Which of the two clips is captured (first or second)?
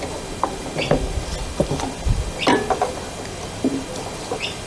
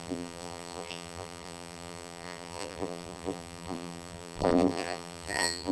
first